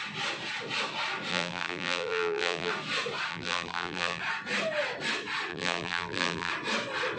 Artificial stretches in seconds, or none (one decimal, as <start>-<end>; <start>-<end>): 1.3-2.7; 3.3-4.2; 5.5-6.5